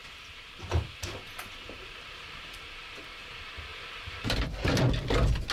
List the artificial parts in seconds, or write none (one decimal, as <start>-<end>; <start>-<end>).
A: 0.0-3.3; 3.7-4.8